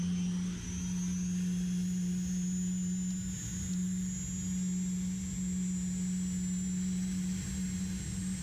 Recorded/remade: recorded